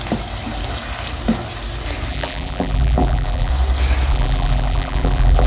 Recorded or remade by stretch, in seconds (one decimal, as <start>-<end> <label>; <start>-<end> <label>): 0.0-2.1 recorded; 2.1-3.5 remade; 3.5-4.1 recorded; 4.1-5.5 remade